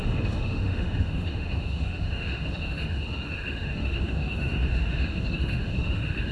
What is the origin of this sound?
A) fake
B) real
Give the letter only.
A